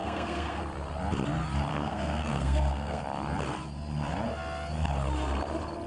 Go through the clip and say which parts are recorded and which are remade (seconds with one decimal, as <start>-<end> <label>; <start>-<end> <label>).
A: 0.0-0.6 remade; 0.6-1.7 recorded; 1.7-3.0 remade; 3.0-5.9 recorded